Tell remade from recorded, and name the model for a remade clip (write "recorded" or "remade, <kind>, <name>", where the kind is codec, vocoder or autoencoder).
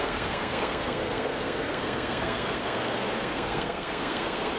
remade, codec, SNAC